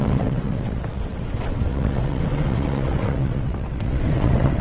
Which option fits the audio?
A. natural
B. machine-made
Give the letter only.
B